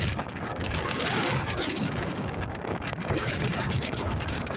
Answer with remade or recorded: remade